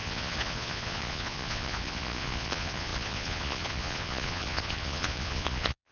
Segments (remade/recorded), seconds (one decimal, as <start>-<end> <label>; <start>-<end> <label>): 0.0-5.9 remade

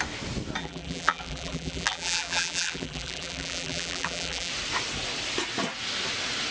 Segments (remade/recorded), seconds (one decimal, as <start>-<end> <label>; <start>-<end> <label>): 0.0-0.6 recorded; 0.6-4.5 remade; 4.5-6.5 recorded

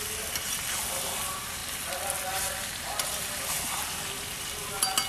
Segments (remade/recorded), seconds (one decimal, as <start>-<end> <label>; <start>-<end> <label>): 0.0-5.1 recorded

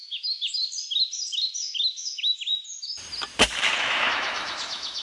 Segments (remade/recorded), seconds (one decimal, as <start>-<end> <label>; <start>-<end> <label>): 0.0-0.6 remade; 0.6-1.6 recorded; 1.6-2.4 remade; 2.4-3.8 recorded; 3.8-5.0 remade